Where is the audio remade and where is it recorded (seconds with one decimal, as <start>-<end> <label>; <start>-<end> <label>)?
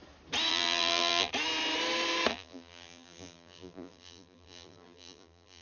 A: 0.0-0.5 recorded; 0.5-1.3 remade; 1.3-2.3 recorded; 2.3-5.6 remade